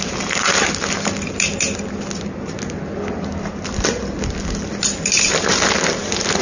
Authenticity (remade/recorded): recorded